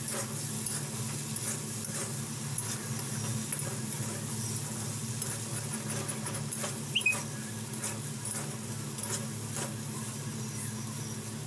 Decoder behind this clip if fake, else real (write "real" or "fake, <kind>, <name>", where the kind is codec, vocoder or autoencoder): real